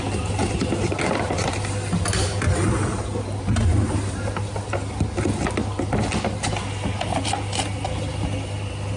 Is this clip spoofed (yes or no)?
no